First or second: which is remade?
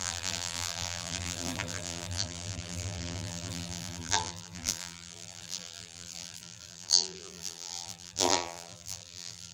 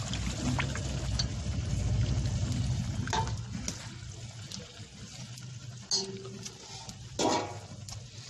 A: first